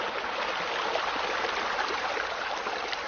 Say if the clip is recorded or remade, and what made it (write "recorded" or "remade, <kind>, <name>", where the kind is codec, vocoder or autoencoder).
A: recorded